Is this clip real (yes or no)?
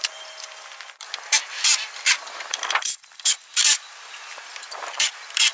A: no